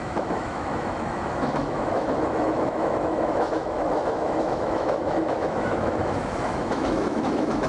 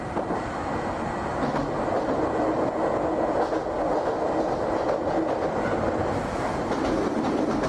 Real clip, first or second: second